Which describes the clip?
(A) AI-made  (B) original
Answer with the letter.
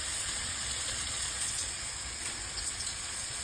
A